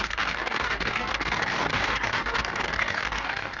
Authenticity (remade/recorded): remade